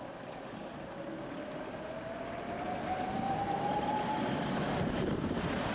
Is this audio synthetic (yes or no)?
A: no